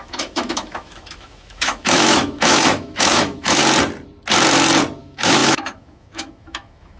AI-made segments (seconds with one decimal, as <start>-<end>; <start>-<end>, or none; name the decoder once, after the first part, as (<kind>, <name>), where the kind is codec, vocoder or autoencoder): 0.0-3.6 (autoencoder, DAC-VAE); 5.0-7.0